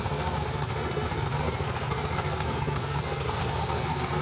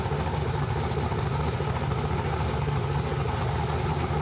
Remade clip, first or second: first